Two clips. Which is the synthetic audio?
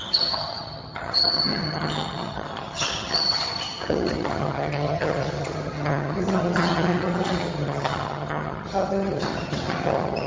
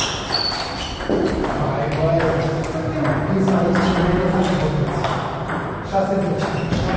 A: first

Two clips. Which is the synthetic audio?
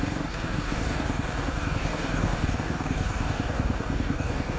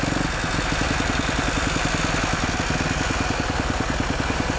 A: first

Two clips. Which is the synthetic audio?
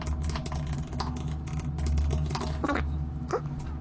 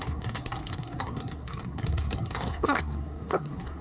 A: second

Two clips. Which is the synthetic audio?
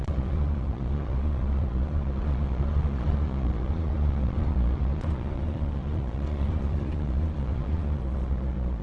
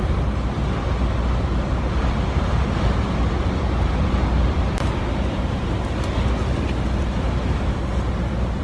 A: first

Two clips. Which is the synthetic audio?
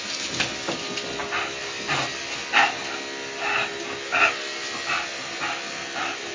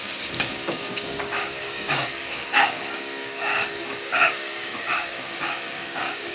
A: second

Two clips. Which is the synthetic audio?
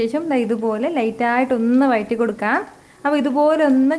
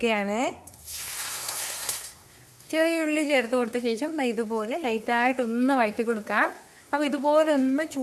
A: second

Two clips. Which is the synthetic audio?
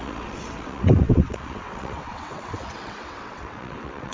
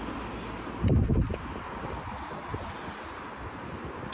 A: first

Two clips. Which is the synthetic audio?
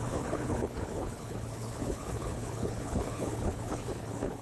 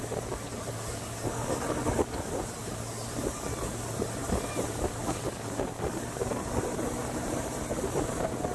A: first